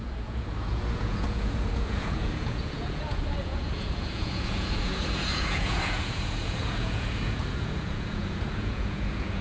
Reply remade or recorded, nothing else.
remade